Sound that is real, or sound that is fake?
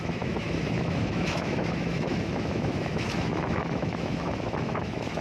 fake